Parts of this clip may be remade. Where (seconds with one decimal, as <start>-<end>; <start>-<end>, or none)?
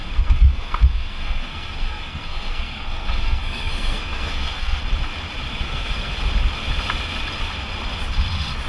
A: 0.0-4.8; 5.5-6.1